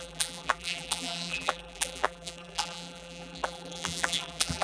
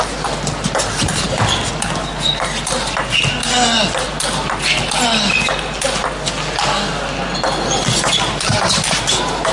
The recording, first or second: second